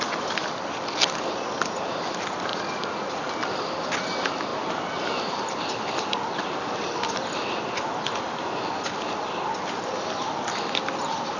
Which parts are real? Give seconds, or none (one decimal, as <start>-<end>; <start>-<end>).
0.0-2.5; 3.3-11.4